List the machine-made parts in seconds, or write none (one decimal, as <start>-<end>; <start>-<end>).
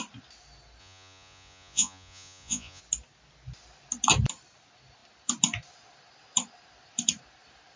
0.8-2.8